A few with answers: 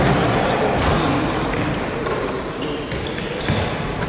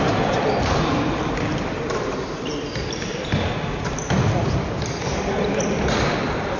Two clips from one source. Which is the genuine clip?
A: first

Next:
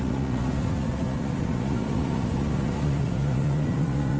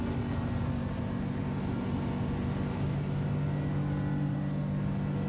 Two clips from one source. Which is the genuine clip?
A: second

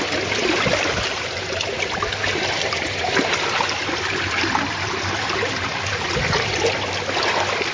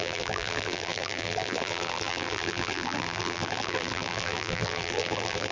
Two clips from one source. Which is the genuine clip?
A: first